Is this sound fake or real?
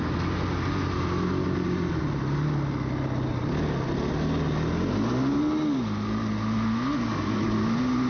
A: real